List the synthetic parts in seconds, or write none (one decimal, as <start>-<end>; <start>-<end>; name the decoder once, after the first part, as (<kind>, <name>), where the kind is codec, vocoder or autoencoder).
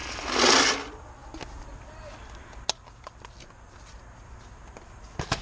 none